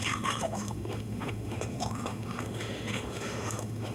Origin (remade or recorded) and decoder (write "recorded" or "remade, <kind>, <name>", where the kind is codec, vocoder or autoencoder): remade, autoencoder, DAC-VAE